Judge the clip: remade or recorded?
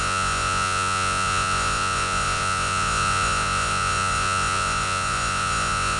remade